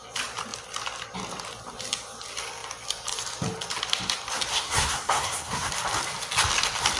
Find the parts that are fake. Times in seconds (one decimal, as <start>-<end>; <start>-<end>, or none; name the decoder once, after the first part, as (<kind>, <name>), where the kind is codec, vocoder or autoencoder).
4.5-5.7 (codec, SNAC)